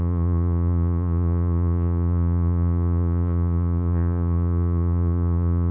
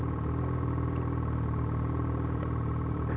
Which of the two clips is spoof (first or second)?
first